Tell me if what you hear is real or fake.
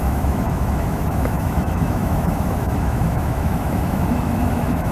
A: fake